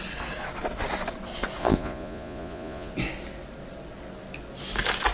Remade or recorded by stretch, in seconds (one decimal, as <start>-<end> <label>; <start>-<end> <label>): 0.0-1.6 recorded; 1.6-2.9 remade; 2.9-5.1 recorded